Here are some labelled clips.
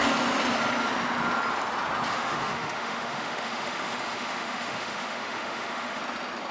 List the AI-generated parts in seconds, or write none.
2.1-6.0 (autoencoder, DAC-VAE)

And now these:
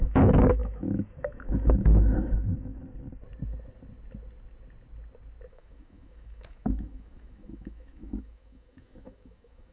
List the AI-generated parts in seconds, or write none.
0.0-2.8 (autoencoder, DAC-VAE); 5.5-9.7

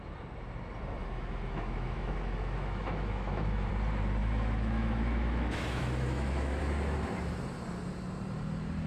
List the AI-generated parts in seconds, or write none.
1.0-3.7 (autoencoder, DAC-VAE); 4.2-6.6

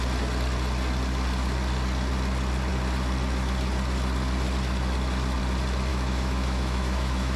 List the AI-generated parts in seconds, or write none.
5.9-7.4 (autoencoder, DAC-VAE)

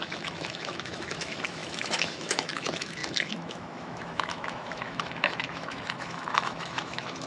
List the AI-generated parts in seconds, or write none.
0.0-7.3 (autoencoder, DAC-VAE)

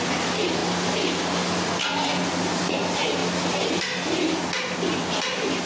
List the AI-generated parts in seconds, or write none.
none

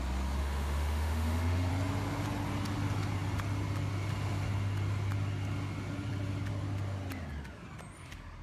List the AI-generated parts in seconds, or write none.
0.4-1.7 (autoencoder, DAC-VAE)

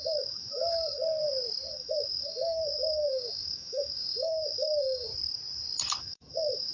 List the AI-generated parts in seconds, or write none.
0.0-1.0 (autoencoder, DAC-VAE); 1.7-5.1; 6.0-6.7